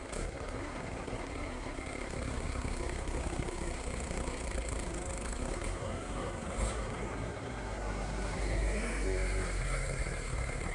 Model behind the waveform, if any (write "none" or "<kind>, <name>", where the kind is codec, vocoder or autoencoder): codec, SNAC